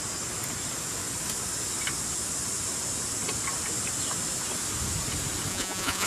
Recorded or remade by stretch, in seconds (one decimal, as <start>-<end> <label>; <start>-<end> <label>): 0.0-5.5 recorded; 5.5-6.1 remade